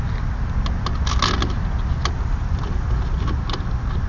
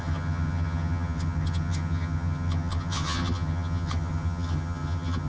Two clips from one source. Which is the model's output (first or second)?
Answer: second